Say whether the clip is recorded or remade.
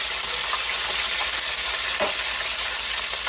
recorded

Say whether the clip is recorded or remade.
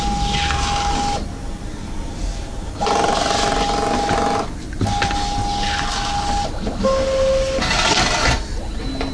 recorded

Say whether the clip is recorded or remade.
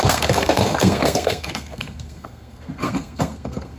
remade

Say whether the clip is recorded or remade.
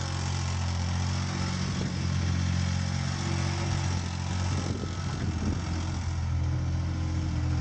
recorded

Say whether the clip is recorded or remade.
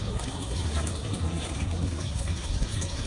remade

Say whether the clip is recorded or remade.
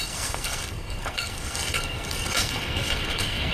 remade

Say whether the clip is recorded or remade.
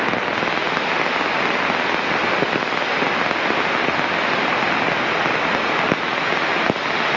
recorded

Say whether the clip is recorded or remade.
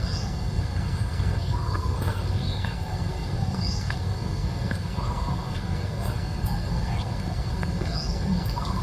remade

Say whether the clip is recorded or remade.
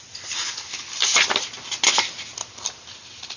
recorded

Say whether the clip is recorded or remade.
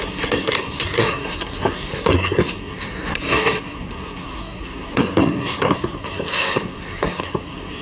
remade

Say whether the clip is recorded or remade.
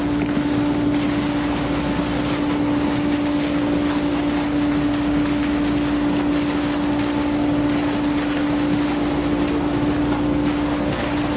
recorded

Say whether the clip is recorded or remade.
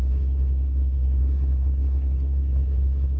remade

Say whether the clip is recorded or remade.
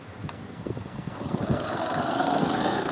remade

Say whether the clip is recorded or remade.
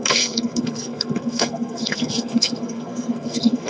remade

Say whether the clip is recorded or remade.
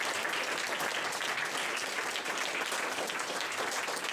recorded